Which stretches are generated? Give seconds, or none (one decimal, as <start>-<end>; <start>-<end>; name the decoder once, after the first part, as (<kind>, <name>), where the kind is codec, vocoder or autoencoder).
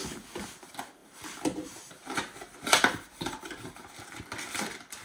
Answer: 1.0-4.0 (vocoder, BigVGAN v2)